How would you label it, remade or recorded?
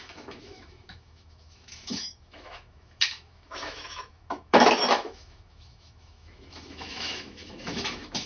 remade